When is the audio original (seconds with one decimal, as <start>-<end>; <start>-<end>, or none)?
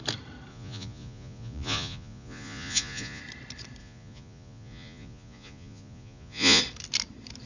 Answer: 0.0-0.5; 3.2-3.8; 6.6-7.5